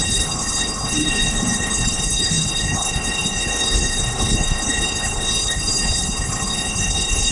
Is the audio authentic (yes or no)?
no